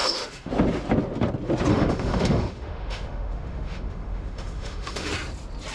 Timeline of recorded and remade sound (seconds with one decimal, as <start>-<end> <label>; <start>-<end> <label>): 0.0-0.5 remade; 0.5-1.7 recorded; 1.7-5.1 remade; 5.1-5.7 recorded